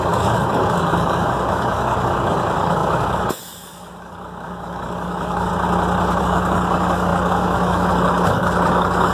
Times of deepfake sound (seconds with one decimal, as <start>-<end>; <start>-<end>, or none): 0.0-5.5; 6.2-9.1